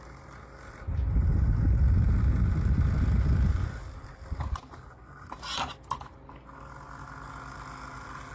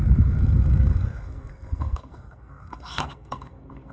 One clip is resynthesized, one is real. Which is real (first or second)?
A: first